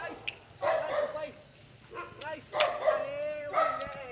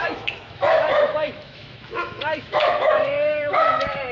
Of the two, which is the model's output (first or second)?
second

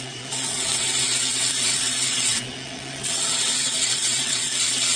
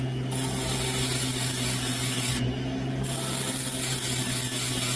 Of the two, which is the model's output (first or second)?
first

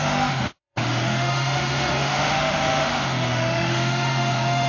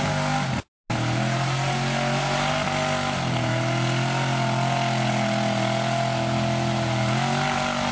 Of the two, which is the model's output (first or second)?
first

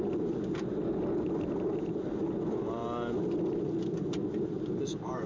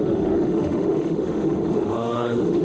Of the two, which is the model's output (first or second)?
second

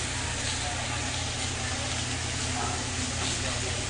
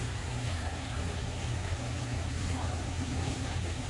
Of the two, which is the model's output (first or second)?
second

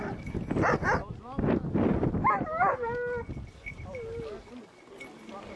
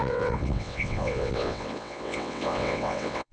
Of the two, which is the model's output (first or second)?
second